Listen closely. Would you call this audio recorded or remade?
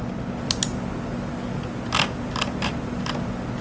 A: recorded